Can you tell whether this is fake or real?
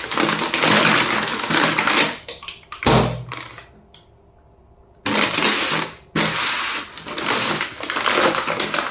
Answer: real